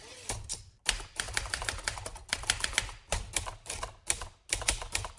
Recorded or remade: recorded